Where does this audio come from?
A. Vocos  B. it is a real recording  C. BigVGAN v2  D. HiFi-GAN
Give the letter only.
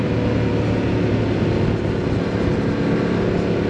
B